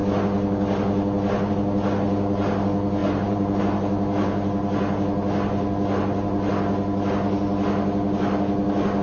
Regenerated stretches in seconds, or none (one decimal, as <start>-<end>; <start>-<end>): 3.0-3.6